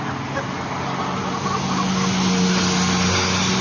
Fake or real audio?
real